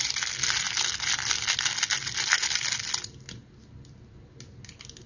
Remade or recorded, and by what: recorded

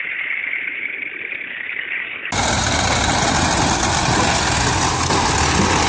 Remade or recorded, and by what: recorded